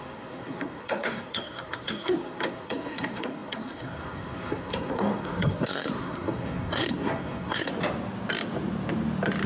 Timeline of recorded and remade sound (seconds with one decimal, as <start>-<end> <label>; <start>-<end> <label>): 0.0-7.7 remade; 7.7-9.5 recorded